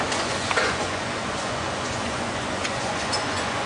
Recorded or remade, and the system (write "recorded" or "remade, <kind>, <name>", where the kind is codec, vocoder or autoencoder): remade, vocoder, Vocos